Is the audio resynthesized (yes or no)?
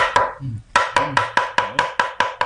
no